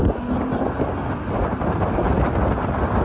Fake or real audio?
real